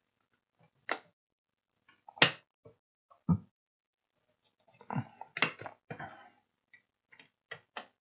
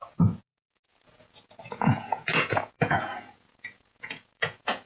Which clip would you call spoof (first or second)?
second